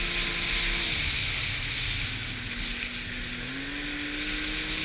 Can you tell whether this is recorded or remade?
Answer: recorded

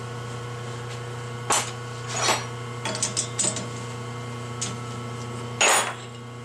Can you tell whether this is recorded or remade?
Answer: recorded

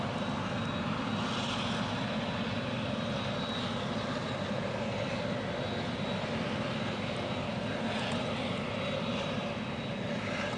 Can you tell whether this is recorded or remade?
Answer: recorded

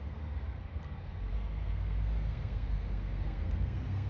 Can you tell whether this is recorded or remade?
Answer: remade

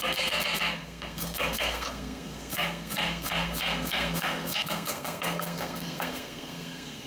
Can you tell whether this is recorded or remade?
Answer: remade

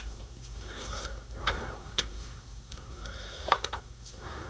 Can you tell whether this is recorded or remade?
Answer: remade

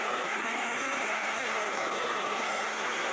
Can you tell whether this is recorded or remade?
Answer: remade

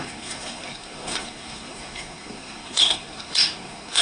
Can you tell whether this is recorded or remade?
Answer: remade